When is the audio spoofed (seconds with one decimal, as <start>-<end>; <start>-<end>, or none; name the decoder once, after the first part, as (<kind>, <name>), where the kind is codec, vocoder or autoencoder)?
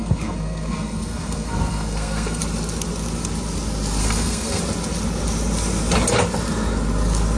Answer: 0.0-2.4 (codec, SNAC); 4.0-4.6